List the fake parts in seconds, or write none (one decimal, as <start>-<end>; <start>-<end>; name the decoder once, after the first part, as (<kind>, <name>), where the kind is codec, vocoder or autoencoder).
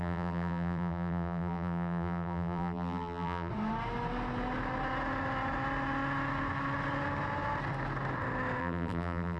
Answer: 0.0-3.5 (vocoder, BigVGAN v2); 8.6-9.4